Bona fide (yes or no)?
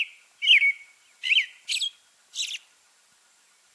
yes